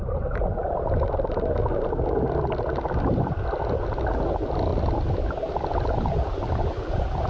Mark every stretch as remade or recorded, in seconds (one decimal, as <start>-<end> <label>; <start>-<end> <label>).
0.0-4.7 recorded; 4.7-7.3 remade